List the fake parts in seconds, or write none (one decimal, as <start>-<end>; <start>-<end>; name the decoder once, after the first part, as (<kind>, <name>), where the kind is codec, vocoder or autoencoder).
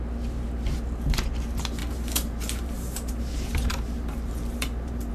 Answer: 1.8-5.1 (vocoder, BigVGAN v2)